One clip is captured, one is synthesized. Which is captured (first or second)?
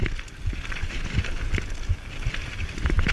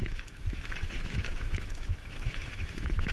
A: first